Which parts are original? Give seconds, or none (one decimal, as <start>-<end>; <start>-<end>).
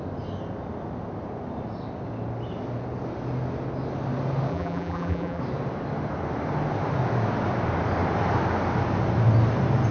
0.0-4.5; 5.4-9.9